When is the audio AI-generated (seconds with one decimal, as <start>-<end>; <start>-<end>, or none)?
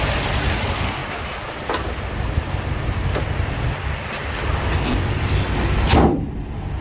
none